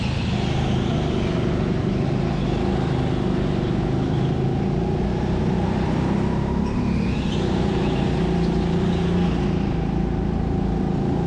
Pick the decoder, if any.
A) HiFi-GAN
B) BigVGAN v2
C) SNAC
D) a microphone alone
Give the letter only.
D